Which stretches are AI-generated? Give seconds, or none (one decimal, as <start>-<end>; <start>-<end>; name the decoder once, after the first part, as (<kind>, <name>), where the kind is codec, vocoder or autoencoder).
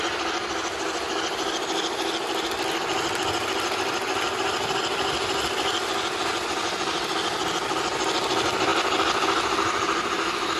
none